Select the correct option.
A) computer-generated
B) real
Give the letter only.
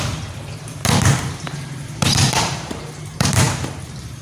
A